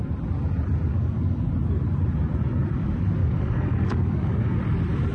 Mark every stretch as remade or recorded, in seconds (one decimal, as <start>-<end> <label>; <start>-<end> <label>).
0.0-0.9 recorded; 0.9-1.5 remade; 1.5-3.2 recorded; 3.2-4.6 remade; 4.6-5.1 recorded